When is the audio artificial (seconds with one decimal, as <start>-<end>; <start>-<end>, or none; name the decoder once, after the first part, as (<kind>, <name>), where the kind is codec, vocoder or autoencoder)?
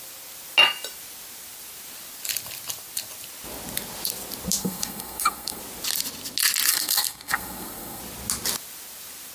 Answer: 4.6-5.6 (codec, SNAC); 6.7-8.0